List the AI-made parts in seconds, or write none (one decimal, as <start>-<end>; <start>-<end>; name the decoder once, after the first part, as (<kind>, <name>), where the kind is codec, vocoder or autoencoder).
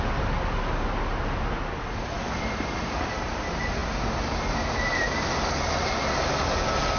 none